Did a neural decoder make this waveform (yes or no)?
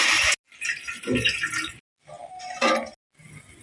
no